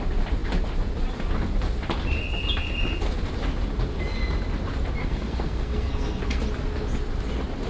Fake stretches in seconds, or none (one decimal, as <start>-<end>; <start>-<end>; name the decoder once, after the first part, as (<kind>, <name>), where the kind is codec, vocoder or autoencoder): 5.0-6.4 (codec, SNAC)